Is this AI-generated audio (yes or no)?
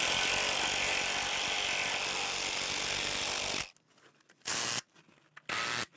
no